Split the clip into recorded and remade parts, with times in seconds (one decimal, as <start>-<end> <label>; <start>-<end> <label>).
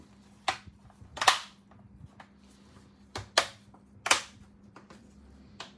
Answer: 0.0-1.1 remade; 1.1-4.6 recorded; 4.6-5.8 remade